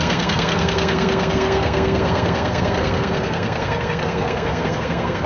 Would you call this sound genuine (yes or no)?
no